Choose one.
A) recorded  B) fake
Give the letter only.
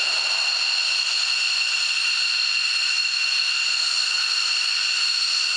A